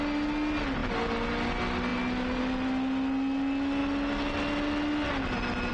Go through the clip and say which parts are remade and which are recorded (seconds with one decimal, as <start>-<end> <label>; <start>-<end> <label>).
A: 0.0-5.7 recorded